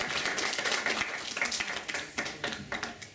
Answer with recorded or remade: recorded